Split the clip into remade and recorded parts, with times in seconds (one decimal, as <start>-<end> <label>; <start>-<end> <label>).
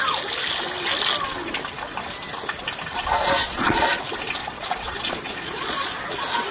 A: 0.0-3.4 recorded; 3.4-4.0 remade; 4.0-4.4 recorded; 4.4-6.0 remade; 6.0-6.5 recorded